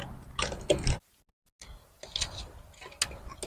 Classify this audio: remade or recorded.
recorded